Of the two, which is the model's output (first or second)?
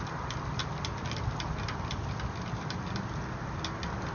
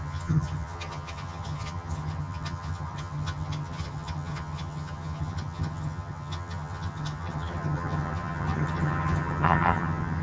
second